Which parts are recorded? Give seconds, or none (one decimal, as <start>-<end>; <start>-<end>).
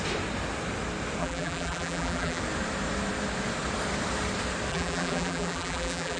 0.0-1.2; 2.4-4.7